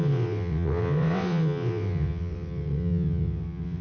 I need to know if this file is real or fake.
fake